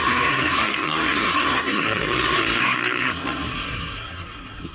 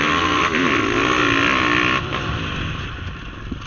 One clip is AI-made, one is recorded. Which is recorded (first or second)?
second